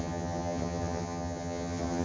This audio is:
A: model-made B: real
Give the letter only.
A